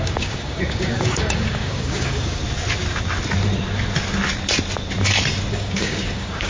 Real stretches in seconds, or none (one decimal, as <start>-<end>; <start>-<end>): 2.4-5.5